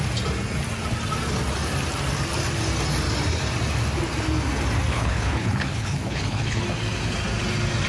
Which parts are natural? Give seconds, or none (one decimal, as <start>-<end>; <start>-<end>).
0.0-4.9; 6.6-7.9

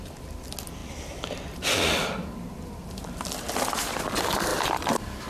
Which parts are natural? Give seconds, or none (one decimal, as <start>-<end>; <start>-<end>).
0.0-0.8; 4.0-4.5

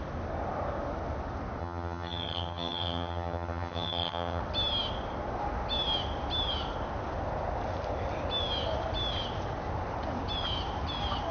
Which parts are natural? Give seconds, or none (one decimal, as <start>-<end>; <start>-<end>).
0.0-1.6; 4.4-11.3

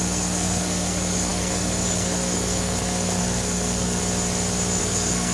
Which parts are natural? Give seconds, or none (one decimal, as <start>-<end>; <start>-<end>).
4.0-4.8